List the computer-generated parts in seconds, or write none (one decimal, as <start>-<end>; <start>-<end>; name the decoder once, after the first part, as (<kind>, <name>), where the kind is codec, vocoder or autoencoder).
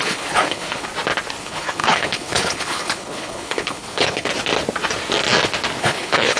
0.0-0.9 (codec, HILCodec); 1.4-4.3; 5.8-6.4